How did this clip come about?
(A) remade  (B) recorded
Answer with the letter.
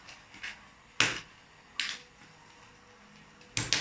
B